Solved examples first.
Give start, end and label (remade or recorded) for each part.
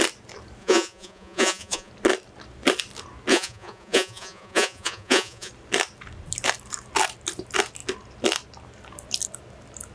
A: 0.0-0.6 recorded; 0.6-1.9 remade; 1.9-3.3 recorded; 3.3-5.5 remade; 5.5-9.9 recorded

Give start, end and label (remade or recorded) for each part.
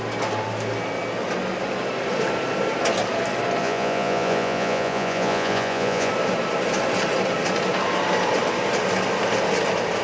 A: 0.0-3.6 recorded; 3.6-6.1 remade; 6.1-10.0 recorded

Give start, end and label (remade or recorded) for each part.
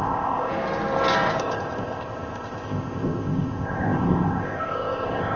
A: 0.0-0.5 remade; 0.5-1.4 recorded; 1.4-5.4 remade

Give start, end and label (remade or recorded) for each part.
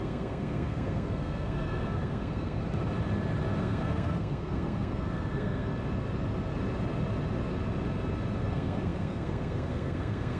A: 0.0-2.6 remade; 2.6-3.6 recorded; 3.6-5.7 remade; 5.7-8.4 recorded; 8.4-10.4 remade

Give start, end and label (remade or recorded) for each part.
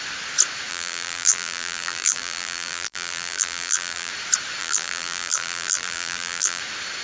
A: 0.0-0.7 recorded; 0.7-4.1 remade; 4.1-4.6 recorded; 4.6-6.6 remade; 6.6-7.0 recorded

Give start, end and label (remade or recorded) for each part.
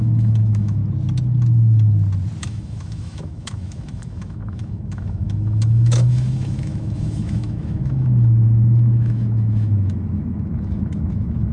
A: 0.0-0.8 remade; 0.8-2.4 recorded; 2.4-11.5 remade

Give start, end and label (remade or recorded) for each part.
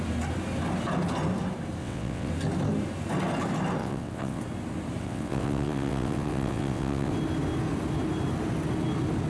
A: 0.0-1.8 recorded; 1.8-2.3 remade; 2.3-3.8 recorded; 3.8-4.4 remade; 4.4-5.0 recorded; 5.0-7.1 remade; 7.1-9.3 recorded